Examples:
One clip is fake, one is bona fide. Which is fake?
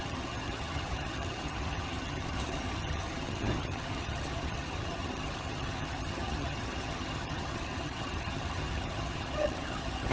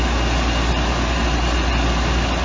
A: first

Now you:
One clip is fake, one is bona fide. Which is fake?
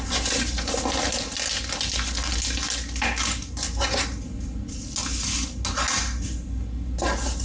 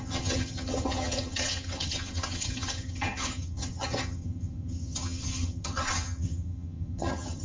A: second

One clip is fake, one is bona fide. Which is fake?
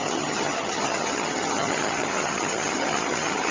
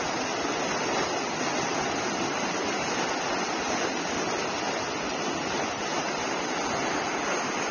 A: first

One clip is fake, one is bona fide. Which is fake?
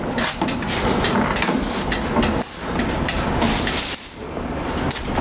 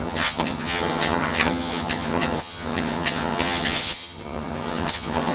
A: second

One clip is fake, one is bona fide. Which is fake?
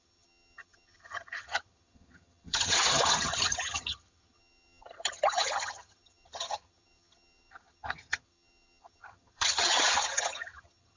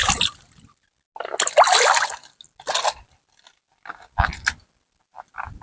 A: first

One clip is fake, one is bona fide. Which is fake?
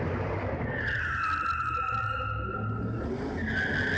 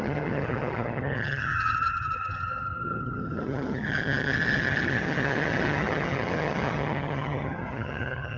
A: second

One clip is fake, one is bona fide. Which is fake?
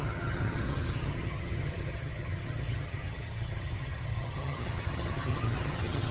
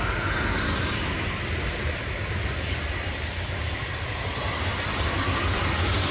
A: first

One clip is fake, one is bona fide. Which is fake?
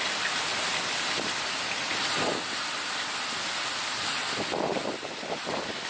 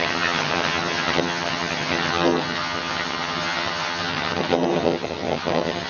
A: second